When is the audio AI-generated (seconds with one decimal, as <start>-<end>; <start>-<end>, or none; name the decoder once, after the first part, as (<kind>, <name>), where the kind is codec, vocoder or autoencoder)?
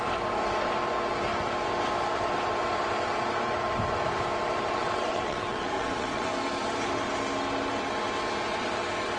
4.7-6.3 (vocoder, WaveNeXt)